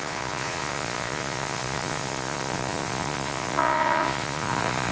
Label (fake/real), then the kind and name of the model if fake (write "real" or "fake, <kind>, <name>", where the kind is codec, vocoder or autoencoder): fake, vocoder, Vocos